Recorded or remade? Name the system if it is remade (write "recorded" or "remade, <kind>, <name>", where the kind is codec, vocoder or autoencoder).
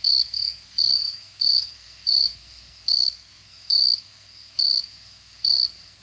remade, codec, SNAC